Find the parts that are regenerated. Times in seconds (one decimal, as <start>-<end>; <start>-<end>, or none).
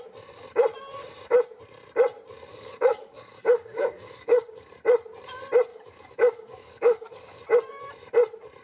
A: 2.5-4.7; 5.7-7.4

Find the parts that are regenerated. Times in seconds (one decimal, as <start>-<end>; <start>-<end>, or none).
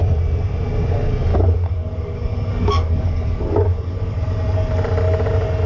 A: 1.3-4.2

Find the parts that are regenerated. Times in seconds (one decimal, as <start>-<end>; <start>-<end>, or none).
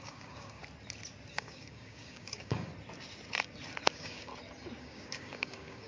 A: 0.0-0.6; 1.3-2.7; 3.9-4.3; 4.8-5.9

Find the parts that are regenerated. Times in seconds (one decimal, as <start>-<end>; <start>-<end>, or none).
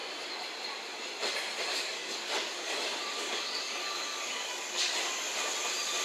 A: 1.7-5.3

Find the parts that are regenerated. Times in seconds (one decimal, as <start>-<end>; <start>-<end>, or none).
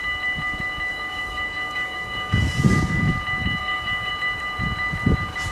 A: 0.9-3.0; 3.6-4.1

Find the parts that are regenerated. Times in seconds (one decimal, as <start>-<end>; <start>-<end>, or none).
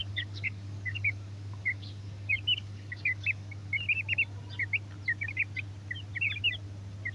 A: 0.0-3.7